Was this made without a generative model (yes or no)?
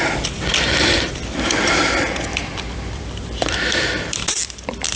no